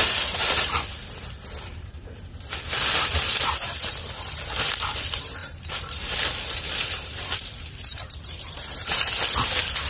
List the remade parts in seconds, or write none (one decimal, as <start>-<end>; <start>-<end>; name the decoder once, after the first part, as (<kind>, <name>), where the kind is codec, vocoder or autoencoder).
5.4-9.1 (vocoder, BigVGAN v2)